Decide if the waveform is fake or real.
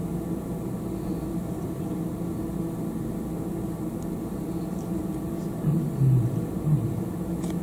real